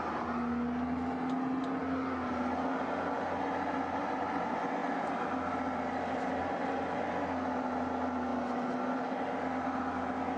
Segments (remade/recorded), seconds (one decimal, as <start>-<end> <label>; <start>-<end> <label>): 0.0-10.4 recorded